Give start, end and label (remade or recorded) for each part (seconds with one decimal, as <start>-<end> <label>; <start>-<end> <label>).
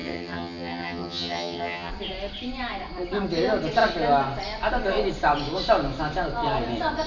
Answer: 0.0-1.9 remade; 1.9-7.1 recorded